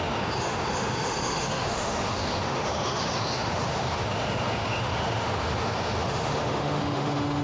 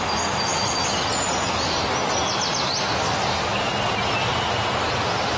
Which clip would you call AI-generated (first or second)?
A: first